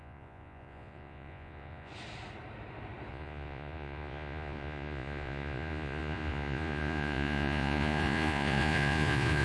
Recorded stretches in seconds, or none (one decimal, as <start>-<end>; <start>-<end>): 1.9-3.1